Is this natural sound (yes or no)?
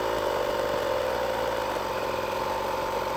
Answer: yes